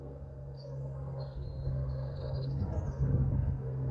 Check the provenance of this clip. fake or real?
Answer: fake